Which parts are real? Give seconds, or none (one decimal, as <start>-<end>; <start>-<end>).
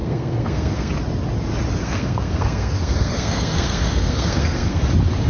0.9-1.8; 4.8-5.3